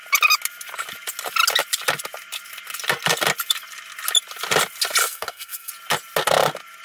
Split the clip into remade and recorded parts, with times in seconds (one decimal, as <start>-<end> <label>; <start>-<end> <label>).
0.0-5.0 recorded; 5.0-5.7 remade; 5.7-6.8 recorded